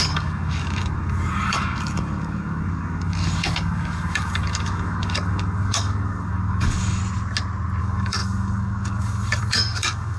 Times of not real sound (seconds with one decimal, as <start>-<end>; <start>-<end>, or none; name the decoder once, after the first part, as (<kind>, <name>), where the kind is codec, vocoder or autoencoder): 0.0-7.0 (codec, DAC); 7.8-10.2